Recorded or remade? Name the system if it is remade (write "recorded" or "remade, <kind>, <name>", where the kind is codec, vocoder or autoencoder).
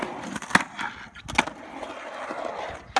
recorded